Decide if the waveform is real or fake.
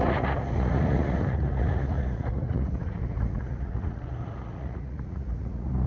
fake